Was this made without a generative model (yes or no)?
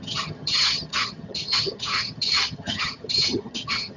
no